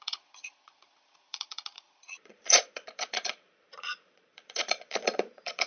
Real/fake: fake